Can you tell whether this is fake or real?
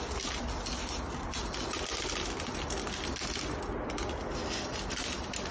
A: real